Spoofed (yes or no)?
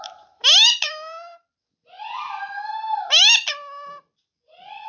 yes